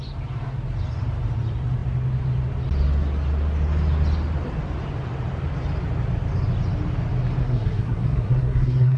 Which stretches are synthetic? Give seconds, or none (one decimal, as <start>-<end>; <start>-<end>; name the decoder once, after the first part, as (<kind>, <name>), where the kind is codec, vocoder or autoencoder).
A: 7.4-9.0 (codec, SNAC)